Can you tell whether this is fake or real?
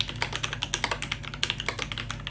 real